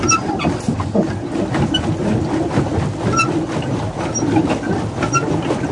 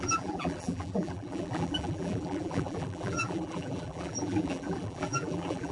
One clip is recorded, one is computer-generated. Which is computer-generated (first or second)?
second